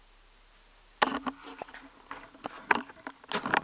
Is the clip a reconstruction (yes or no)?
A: no